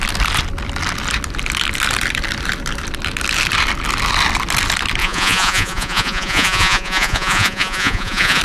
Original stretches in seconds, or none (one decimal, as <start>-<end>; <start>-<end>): 0.0-5.0